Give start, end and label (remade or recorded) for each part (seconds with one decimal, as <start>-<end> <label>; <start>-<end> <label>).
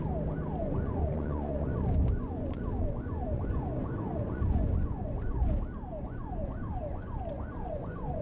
0.0-0.6 recorded; 0.6-5.5 remade; 5.5-5.9 recorded; 5.9-8.2 remade